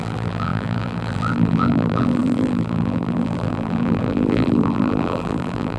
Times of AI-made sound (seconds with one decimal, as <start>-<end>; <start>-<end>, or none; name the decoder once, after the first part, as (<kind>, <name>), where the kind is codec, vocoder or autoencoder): 0.0-5.8 (vocoder, BigVGAN v2)